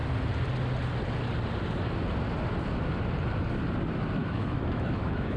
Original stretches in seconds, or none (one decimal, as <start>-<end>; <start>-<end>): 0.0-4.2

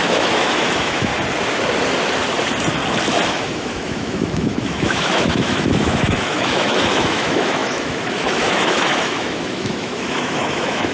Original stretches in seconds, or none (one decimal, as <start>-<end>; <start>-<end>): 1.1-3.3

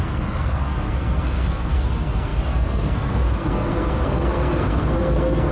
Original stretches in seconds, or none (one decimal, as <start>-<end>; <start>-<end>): none

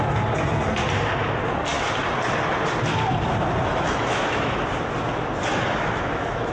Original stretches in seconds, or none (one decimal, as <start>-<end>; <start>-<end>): 0.0-3.7; 4.6-5.5

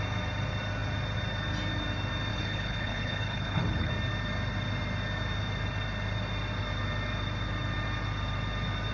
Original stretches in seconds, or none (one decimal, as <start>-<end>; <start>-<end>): 0.0-2.3; 3.9-8.9

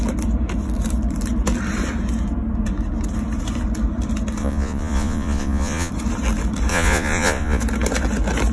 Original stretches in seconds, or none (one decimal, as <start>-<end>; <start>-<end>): 0.0-4.4; 5.9-6.7; 7.6-8.5